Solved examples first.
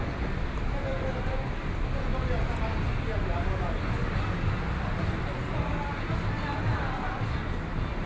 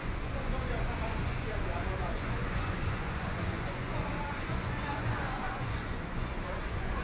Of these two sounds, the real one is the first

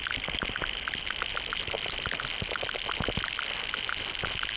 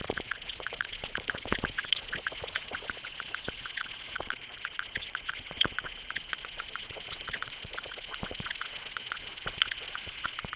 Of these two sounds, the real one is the first